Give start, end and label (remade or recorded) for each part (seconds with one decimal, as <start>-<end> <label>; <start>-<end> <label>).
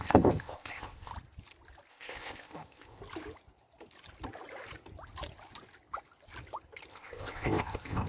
0.0-1.1 remade; 1.1-1.9 recorded; 1.9-3.0 remade; 3.0-6.9 recorded; 6.9-8.1 remade